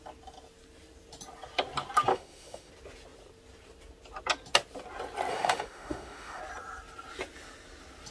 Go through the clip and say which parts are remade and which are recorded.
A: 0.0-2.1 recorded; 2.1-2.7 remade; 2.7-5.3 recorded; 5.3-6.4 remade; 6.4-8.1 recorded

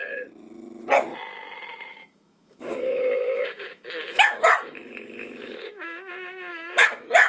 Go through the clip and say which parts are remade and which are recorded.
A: 0.0-1.9 recorded; 1.9-6.1 remade; 6.1-6.5 recorded; 6.5-7.3 remade

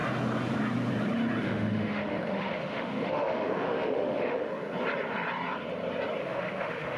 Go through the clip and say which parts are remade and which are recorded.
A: 0.0-1.4 recorded; 1.4-4.5 remade; 4.5-6.2 recorded; 6.2-7.0 remade

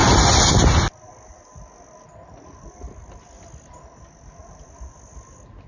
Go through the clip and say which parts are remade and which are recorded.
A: 0.0-5.7 recorded

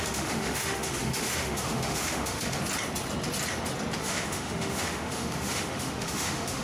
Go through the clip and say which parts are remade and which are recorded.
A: 0.0-2.6 remade; 2.6-4.0 recorded; 4.0-6.6 remade